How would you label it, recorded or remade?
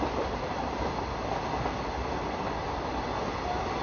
recorded